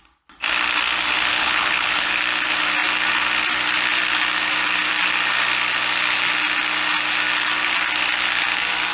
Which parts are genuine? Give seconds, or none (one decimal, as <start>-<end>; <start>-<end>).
0.0-1.3; 2.1-8.9